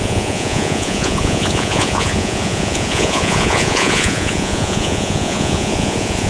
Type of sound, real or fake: fake